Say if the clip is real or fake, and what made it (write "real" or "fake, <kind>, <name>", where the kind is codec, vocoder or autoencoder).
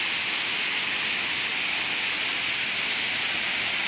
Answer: real